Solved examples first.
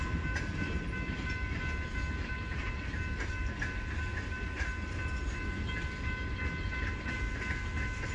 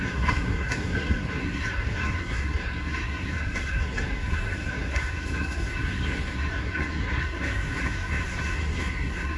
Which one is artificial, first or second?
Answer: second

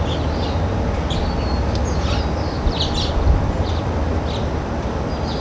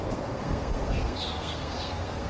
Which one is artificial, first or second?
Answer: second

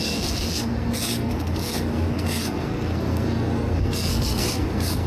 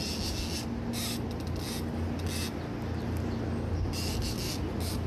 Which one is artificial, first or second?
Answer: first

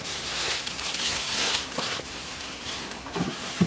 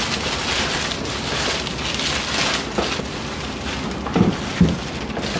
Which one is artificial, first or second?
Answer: first